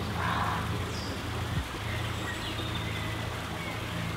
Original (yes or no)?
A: yes